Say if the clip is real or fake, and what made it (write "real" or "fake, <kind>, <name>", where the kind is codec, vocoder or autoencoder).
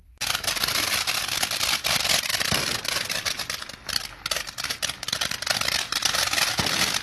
real